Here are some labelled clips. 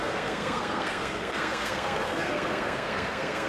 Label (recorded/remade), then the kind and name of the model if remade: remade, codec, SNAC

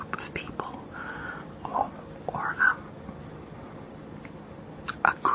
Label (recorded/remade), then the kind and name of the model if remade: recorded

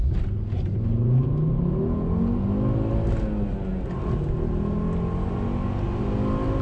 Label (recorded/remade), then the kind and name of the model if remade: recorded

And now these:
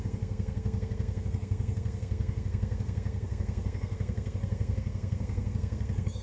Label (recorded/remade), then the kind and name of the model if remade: remade, codec, SNAC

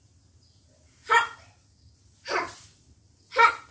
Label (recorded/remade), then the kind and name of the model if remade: recorded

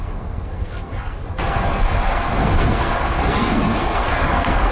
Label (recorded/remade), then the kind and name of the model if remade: remade, codec, SNAC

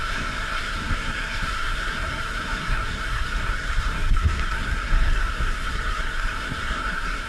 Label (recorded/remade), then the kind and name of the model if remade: remade, codec, SNAC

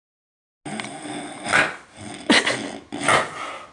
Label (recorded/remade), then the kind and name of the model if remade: recorded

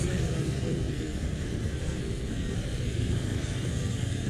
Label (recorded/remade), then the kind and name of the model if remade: remade, codec, SNAC